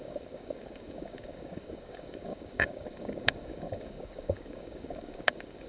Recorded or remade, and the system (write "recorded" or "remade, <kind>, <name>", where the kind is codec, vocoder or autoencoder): remade, codec, DAC